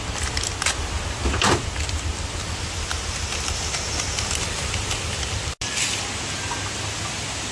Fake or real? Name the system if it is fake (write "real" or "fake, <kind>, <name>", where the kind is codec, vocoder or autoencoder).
real